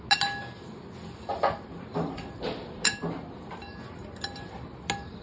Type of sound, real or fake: real